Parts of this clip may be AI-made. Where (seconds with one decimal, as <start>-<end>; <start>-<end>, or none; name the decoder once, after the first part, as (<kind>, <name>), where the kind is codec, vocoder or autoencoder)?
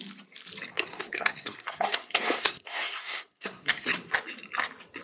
0.9-3.9 (codec, SNAC)